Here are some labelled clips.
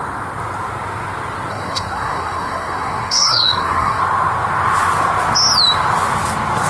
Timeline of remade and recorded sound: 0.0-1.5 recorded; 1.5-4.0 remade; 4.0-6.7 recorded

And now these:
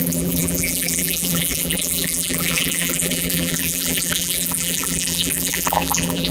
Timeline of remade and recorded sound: 0.0-6.3 remade

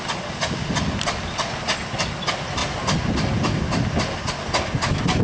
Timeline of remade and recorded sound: 0.0-5.2 recorded

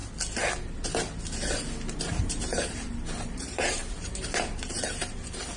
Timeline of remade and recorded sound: 0.0-2.0 recorded; 2.0-5.6 remade

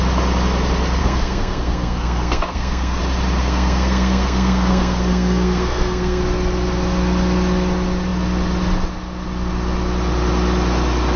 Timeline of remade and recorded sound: 0.0-1.0 recorded; 1.0-3.0 remade; 3.0-3.4 recorded; 3.4-6.2 remade; 6.2-11.2 recorded

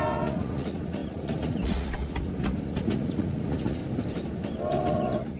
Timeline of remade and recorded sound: 0.0-3.8 remade; 3.8-4.7 recorded; 4.7-5.4 remade